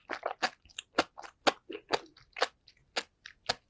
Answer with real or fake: real